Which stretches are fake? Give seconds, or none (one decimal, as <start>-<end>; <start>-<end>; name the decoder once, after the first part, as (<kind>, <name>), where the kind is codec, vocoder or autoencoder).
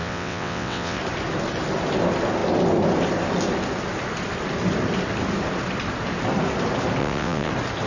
0.0-1.0 (vocoder, WaveNeXt); 7.0-7.5